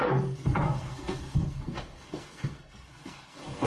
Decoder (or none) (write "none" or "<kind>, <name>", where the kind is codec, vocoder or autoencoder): codec, SNAC